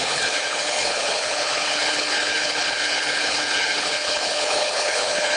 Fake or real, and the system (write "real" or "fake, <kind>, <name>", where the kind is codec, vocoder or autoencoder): fake, codec, HILCodec